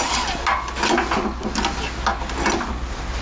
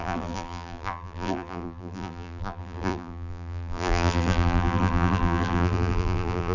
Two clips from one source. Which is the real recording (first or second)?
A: first